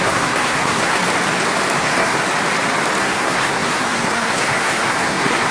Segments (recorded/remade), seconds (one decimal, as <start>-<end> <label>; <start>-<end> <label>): 0.0-1.0 remade; 1.0-1.8 recorded; 1.8-2.2 remade; 2.2-3.0 recorded; 3.0-5.5 remade